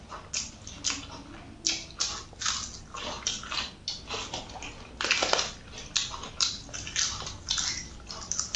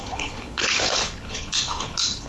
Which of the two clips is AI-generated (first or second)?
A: second